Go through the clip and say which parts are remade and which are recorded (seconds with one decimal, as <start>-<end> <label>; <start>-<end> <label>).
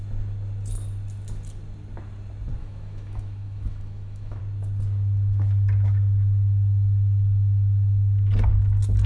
0.0-2.6 recorded; 2.6-4.4 remade; 4.4-9.1 recorded